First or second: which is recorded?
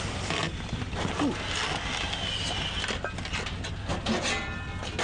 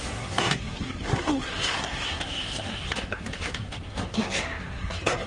first